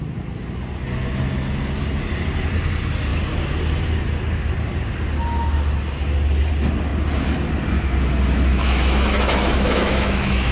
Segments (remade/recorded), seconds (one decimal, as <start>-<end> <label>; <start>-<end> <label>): 0.0-8.5 recorded; 8.5-10.5 remade